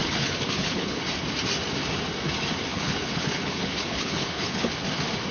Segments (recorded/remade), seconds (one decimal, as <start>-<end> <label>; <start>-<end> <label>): 0.0-1.0 remade; 1.0-2.7 recorded; 2.7-4.7 remade; 4.7-5.3 recorded

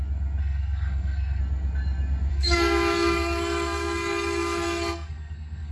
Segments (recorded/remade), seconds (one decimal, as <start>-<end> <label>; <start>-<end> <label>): 0.0-0.4 recorded; 0.4-1.4 remade; 1.4-2.3 recorded; 2.3-5.7 remade

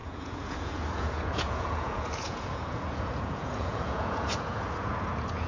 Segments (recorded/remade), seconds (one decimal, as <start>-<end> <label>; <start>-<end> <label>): 0.0-5.5 remade

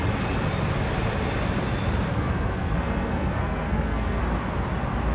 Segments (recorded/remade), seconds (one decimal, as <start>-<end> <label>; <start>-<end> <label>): 0.0-2.1 recorded; 2.1-4.2 remade; 4.2-5.1 recorded